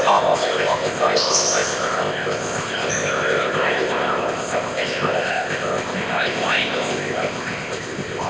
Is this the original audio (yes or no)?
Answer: no